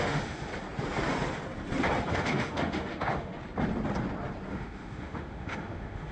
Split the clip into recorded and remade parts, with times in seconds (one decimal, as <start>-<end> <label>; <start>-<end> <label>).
0.0-0.5 remade; 0.5-2.1 recorded; 2.1-3.3 remade; 3.3-4.5 recorded; 4.5-6.1 remade